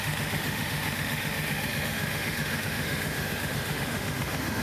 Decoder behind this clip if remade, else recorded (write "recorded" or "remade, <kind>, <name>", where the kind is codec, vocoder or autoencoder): remade, autoencoder, DAC-VAE